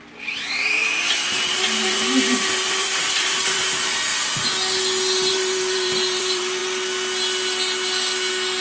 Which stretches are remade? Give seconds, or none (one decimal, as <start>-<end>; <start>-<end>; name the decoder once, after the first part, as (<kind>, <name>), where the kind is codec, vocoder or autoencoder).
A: 0.0-4.1 (vocoder, BigVGAN v2); 5.3-6.6